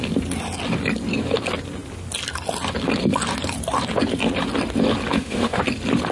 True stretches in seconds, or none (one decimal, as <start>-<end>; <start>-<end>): 0.0-5.1; 5.6-6.1